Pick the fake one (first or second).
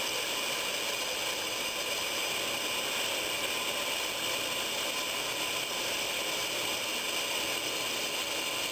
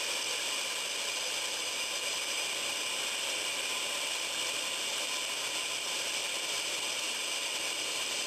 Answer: second